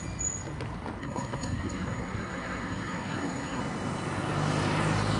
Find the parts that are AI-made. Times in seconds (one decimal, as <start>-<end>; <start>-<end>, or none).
1.0-3.6